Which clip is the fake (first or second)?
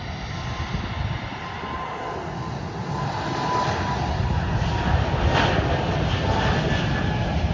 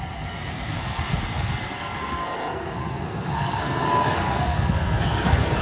second